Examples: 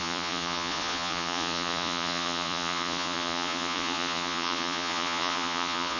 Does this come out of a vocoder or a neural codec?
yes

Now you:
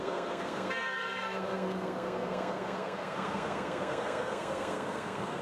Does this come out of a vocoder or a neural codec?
yes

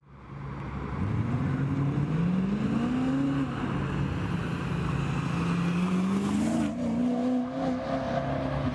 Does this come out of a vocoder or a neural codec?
no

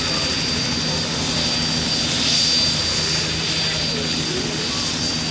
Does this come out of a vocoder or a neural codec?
no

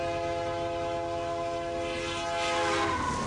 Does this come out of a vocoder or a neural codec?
no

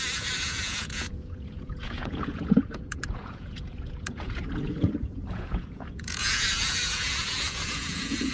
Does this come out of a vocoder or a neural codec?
yes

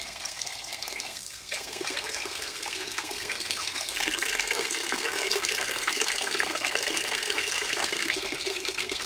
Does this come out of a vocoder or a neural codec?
yes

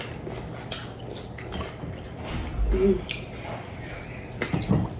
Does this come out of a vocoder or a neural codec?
no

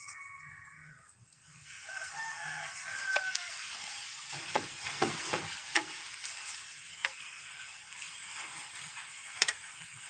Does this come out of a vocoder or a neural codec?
yes